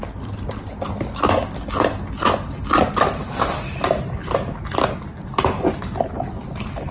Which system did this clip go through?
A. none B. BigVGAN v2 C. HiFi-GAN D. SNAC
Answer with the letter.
A